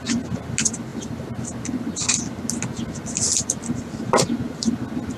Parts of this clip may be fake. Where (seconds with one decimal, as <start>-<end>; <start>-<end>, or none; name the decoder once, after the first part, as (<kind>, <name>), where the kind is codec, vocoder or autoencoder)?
none